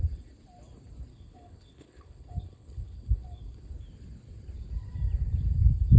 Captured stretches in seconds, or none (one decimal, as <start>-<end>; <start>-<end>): 0.0-1.1; 3.7-6.0